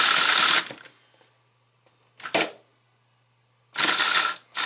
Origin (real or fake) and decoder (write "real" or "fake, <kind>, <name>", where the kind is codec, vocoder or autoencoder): real